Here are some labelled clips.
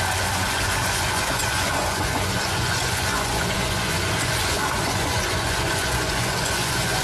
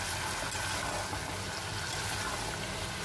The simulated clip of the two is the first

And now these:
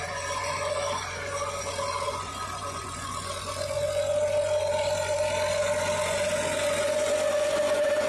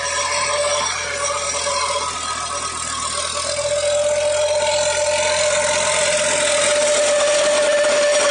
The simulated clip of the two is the first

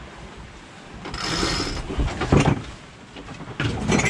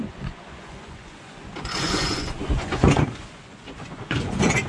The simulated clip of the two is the second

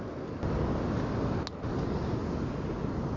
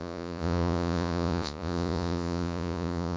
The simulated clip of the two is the second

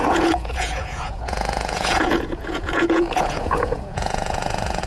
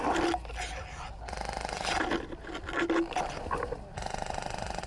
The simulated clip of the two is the first